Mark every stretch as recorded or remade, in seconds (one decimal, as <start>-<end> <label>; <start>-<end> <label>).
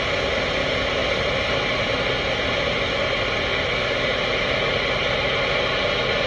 0.0-6.3 recorded